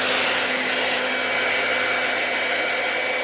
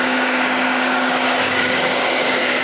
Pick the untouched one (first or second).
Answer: first